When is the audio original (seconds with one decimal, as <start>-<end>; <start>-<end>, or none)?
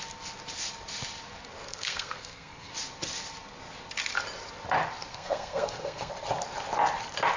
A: 0.0-1.7; 2.7-5.1; 6.1-7.4